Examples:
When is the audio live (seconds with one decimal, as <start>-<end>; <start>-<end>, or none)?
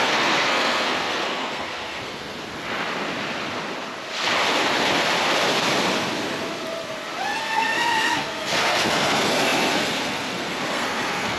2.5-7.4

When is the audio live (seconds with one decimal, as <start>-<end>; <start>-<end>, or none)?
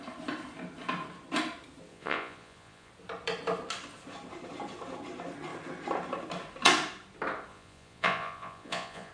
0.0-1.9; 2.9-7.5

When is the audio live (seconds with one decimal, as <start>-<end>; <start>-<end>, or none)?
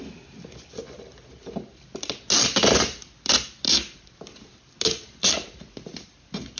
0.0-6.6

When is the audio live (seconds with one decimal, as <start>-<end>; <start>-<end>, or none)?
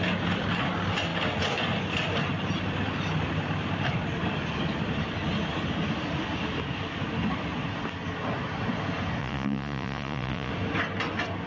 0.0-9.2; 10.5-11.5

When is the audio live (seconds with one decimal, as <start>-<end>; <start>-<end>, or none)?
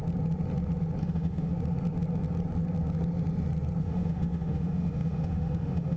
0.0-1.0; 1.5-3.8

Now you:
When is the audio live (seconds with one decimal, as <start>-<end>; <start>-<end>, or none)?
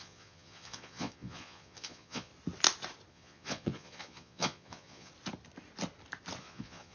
2.3-3.1; 5.1-6.4